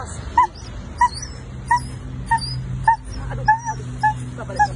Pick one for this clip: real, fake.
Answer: real